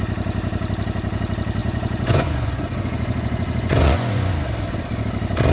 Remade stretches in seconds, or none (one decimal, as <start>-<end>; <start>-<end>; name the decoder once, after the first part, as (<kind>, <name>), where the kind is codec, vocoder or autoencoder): 1.6-4.3 (vocoder, Vocos)